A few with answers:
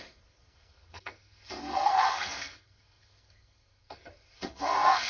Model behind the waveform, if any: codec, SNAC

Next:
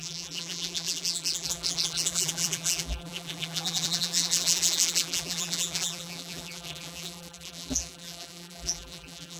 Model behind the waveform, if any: vocoder, BigVGAN v2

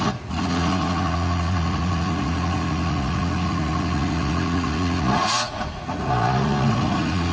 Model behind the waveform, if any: vocoder, Vocos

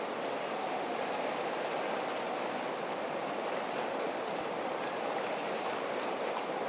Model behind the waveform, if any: none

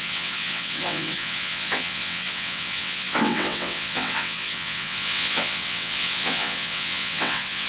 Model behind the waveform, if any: vocoder, WaveNeXt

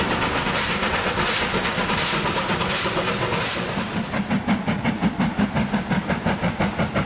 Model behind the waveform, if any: none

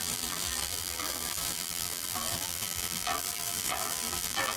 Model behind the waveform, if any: vocoder, BigVGAN v2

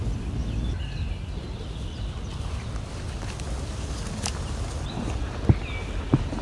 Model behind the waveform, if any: none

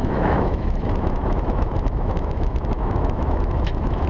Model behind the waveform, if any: autoencoder, DAC-VAE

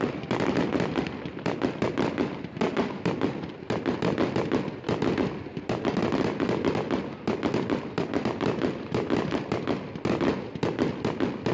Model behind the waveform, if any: none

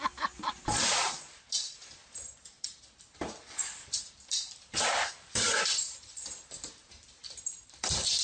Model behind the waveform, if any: none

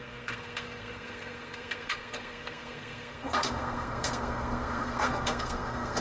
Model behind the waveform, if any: codec, SNAC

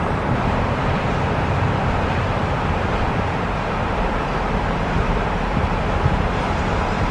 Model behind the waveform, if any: vocoder, BigVGAN v2